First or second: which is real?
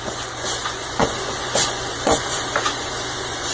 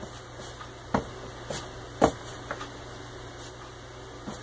second